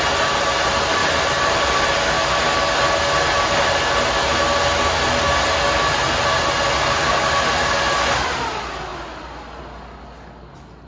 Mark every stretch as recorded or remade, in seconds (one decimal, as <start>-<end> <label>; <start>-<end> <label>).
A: 0.0-1.0 recorded; 1.0-1.9 remade; 1.9-10.9 recorded